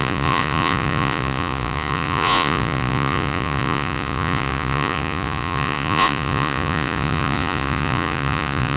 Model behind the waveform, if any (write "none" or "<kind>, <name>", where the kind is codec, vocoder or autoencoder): vocoder, Vocos